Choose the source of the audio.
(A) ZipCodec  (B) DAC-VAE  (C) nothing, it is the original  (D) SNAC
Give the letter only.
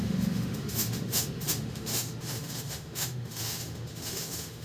B